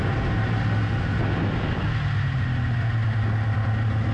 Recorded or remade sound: recorded